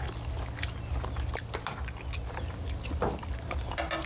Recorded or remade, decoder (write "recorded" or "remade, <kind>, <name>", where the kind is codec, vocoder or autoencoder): recorded